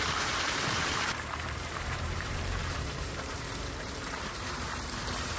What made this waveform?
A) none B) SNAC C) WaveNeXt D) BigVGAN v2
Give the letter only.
D